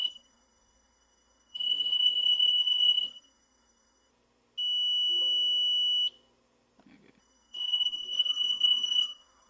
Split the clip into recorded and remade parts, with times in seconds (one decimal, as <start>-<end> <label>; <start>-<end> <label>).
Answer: 0.0-4.1 remade; 4.1-7.2 recorded; 7.2-9.5 remade